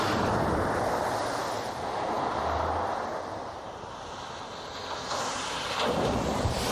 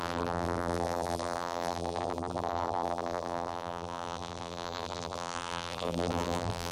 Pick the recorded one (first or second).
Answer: first